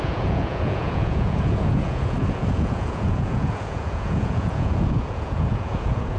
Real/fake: fake